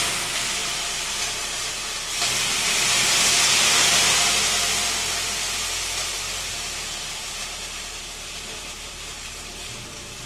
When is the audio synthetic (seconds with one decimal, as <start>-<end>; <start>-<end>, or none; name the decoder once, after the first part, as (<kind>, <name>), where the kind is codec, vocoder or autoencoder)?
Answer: 5.4-10.3 (vocoder, BigVGAN v2)